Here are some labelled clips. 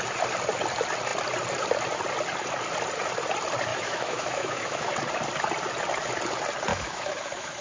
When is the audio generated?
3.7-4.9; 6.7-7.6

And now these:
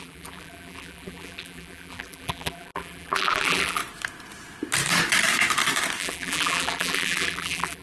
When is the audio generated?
0.0-3.8; 6.0-7.8